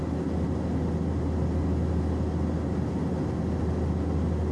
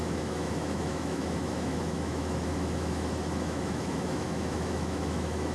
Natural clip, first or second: first